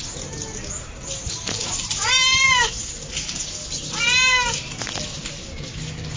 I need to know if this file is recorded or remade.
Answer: recorded